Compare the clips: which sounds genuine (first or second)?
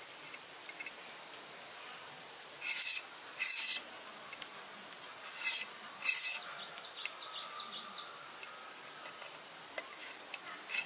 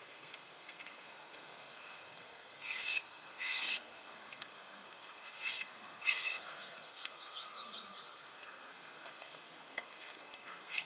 first